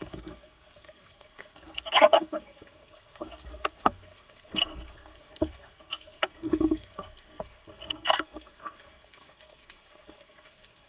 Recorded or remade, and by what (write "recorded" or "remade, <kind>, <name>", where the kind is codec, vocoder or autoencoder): remade, codec, SNAC